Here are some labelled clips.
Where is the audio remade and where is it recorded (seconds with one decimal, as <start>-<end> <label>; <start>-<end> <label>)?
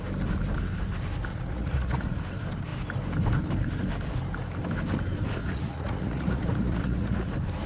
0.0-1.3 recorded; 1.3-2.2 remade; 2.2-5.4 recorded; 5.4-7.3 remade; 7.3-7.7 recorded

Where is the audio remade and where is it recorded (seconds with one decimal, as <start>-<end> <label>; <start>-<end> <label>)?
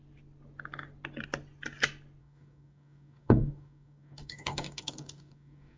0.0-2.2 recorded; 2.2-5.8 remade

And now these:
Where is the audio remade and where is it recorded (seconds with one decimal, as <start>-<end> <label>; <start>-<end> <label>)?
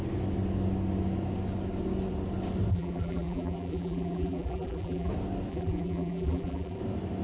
0.0-2.7 recorded; 2.7-5.1 remade; 5.1-5.5 recorded; 5.5-6.8 remade; 6.8-7.2 recorded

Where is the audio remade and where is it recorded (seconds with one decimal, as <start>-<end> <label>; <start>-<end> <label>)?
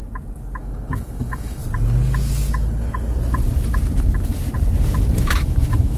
0.0-0.6 recorded; 0.6-1.6 remade; 1.6-5.2 recorded; 5.2-6.0 remade